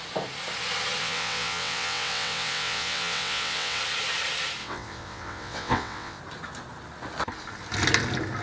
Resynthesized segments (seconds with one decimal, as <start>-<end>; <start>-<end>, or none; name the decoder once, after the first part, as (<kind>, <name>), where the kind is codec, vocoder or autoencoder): 1.0-3.8 (vocoder, WaveNeXt); 4.6-6.2